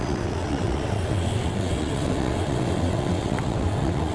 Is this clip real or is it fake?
fake